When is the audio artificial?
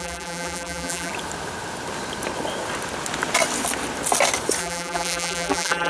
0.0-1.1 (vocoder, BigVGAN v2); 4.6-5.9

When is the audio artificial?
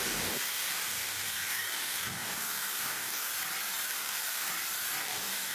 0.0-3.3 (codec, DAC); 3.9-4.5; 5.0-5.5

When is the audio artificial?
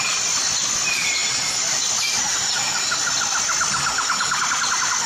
none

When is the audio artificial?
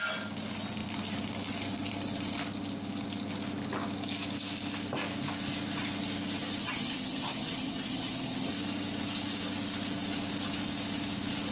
6.6-8.5 (vocoder, HiFi-GAN)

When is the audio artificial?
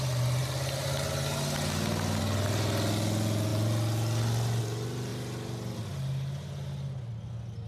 none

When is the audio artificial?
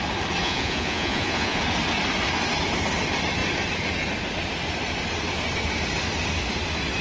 0.4-1.6 (vocoder, Vocos)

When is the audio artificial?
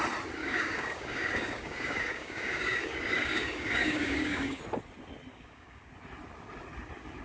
0.4-4.6 (codec, DAC); 5.3-5.9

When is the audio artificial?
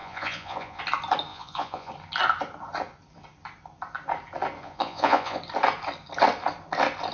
0.0-0.8 (vocoder, Vocos); 1.3-1.9; 4.6-5.4